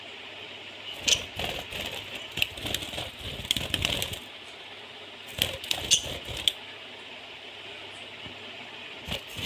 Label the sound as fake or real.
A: real